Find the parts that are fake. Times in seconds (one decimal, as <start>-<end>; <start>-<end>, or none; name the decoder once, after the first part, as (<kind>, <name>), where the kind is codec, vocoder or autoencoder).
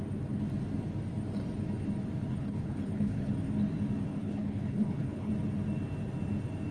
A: 2.3-3.3 (codec, HILCodec); 4.1-5.3